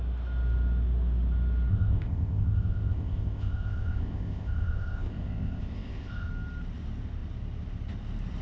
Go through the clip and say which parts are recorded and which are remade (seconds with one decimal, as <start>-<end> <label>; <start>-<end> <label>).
0.0-1.7 recorded; 1.7-6.3 remade; 6.3-8.4 recorded